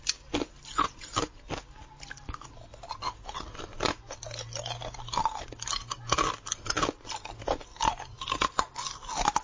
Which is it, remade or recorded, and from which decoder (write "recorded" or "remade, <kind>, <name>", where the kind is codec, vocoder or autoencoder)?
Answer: recorded